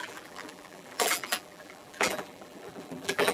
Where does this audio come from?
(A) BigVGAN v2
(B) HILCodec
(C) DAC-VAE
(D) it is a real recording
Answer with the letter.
A